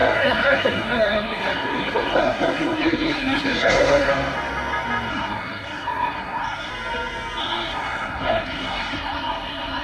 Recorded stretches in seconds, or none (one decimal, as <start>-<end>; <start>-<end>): 4.1-5.1; 6.7-7.4